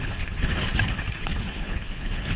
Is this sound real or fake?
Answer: fake